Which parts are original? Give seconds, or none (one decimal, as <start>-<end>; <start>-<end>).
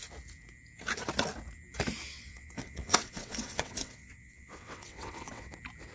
0.0-2.0; 5.5-5.9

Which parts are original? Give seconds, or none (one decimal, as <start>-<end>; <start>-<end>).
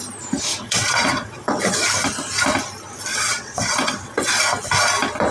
0.0-0.5; 1.6-3.1; 4.4-5.3